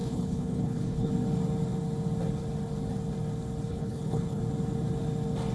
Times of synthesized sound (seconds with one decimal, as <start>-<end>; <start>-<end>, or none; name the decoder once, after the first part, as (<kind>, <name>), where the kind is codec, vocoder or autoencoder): 0.0-1.1 (codec, HILCodec); 3.7-4.4